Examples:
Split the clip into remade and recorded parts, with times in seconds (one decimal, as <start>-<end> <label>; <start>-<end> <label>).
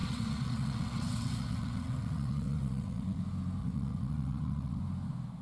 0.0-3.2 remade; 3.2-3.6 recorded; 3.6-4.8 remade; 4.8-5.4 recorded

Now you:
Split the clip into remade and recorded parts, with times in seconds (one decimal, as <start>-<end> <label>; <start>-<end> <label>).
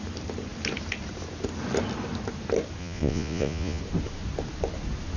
0.0-2.8 recorded; 2.8-3.8 remade; 3.8-5.2 recorded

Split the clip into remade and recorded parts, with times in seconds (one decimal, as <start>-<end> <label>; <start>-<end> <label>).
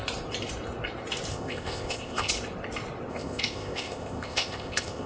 0.0-1.3 recorded; 1.3-2.3 remade; 2.3-3.1 recorded; 3.1-5.1 remade